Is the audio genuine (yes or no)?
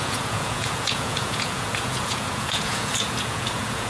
no